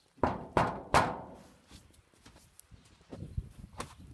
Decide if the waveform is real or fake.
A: real